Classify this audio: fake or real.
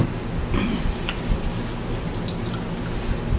real